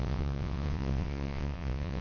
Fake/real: fake